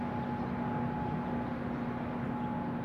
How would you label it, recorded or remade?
recorded